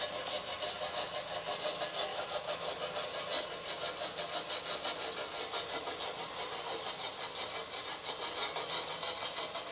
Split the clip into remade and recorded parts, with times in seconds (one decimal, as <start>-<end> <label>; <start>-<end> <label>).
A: 0.0-2.1 recorded; 2.1-2.8 remade; 2.8-9.7 recorded